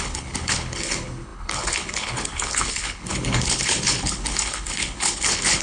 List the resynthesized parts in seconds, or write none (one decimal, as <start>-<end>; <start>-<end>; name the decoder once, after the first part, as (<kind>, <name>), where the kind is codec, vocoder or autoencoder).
0.0-5.6 (codec, HILCodec)